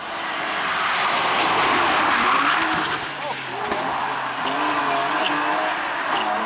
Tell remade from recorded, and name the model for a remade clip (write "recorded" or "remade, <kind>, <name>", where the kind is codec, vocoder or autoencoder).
recorded